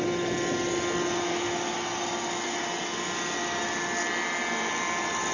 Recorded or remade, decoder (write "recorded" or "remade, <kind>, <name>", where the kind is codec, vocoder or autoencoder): recorded